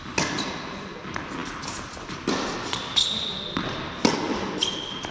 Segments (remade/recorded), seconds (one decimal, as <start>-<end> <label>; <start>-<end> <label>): 0.0-5.1 recorded